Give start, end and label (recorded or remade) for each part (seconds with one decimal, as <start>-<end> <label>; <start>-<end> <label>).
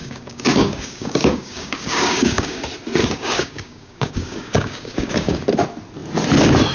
0.0-2.6 remade; 2.6-3.0 recorded; 3.0-5.4 remade; 5.4-6.7 recorded